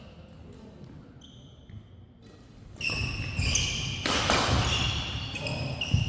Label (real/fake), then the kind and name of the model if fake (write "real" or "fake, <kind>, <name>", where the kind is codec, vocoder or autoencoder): real